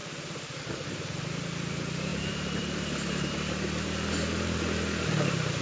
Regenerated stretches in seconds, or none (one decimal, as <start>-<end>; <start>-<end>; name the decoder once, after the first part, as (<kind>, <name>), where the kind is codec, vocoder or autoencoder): none